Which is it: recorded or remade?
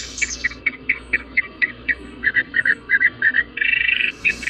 remade